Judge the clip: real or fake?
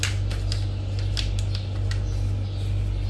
real